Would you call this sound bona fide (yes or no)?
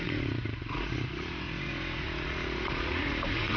no